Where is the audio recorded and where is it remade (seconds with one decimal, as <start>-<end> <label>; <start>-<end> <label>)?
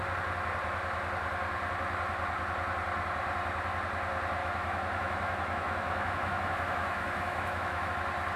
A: 0.0-4.4 recorded; 4.4-7.9 remade; 7.9-8.4 recorded